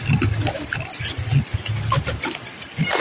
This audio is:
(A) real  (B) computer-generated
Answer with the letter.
A